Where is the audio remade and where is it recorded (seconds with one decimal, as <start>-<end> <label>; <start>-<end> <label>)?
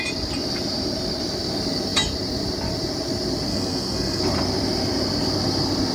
0.0-3.5 recorded; 3.5-4.2 remade; 4.2-5.9 recorded